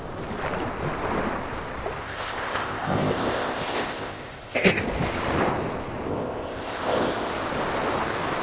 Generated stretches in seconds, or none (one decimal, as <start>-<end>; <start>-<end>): 2.0-4.8; 6.1-7.3